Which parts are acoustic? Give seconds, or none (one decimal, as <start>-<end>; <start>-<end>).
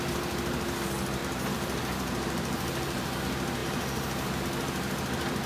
0.0-1.2; 3.2-3.6; 4.4-5.5